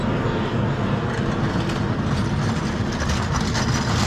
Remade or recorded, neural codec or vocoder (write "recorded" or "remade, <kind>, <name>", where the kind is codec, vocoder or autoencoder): recorded